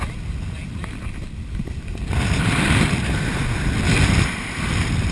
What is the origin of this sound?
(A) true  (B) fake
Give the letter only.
A